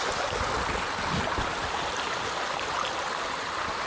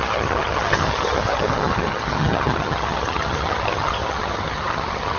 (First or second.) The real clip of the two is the first